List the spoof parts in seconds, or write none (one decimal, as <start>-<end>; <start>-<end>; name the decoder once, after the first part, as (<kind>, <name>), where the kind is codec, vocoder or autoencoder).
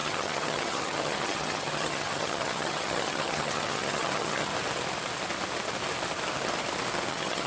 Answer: 0.0-4.5 (vocoder, HiFi-GAN); 7.1-7.5